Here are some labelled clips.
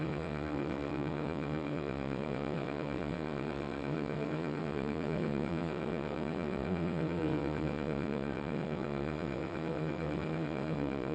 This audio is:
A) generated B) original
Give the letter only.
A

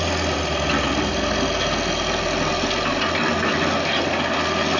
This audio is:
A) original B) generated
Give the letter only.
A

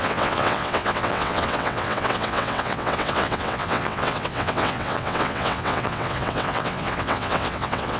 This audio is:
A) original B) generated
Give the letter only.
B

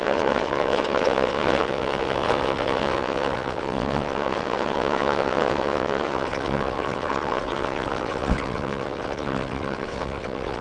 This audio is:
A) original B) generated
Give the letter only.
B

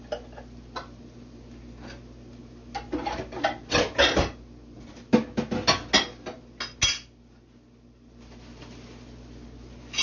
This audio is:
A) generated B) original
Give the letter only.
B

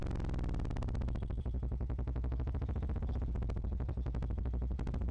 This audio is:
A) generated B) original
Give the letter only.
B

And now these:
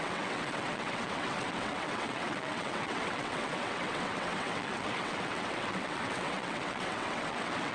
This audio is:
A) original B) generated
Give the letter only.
B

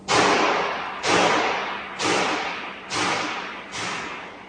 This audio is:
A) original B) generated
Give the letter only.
A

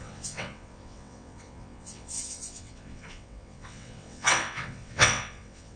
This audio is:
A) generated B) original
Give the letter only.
A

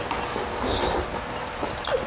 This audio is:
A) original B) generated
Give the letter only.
A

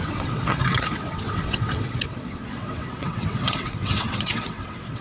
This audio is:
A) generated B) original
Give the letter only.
A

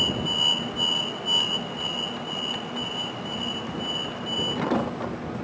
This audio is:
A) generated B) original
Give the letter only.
B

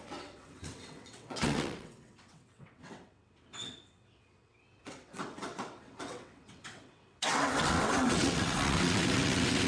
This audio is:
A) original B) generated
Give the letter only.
B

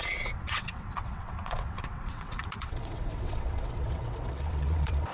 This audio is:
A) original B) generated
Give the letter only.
B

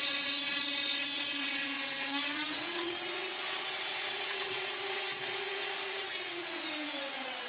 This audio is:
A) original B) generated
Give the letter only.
B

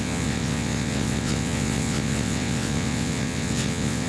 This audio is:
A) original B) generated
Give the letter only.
B